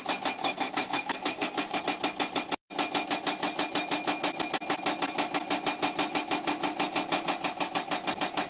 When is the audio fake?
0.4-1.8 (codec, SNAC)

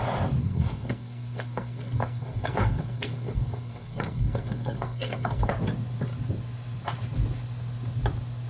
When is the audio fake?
0.4-5.5 (codec, SNAC)

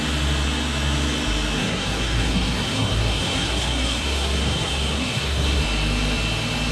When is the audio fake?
1.6-5.6 (codec, SNAC)

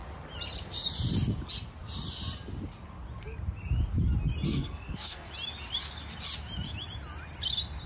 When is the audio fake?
4.5-5.3 (codec, SNAC)

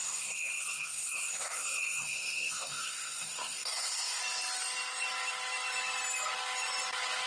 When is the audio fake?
0.0-4.2 (codec, SNAC)

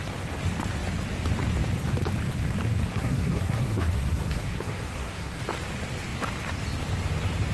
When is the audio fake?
2.9-5.4 (codec, SNAC)

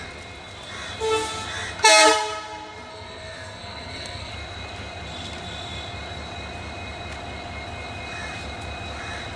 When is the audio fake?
2.9-4.3 (codec, SNAC)

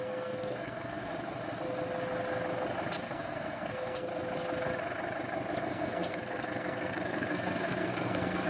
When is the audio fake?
0.0-1.1 (codec, SNAC); 3.0-4.1; 5.6-8.5